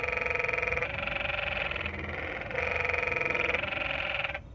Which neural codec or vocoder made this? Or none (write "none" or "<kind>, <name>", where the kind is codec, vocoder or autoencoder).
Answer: none